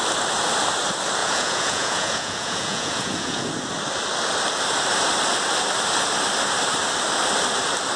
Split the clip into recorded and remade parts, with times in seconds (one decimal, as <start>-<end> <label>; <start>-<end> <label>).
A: 0.0-1.2 recorded; 1.2-3.5 remade; 3.5-8.0 recorded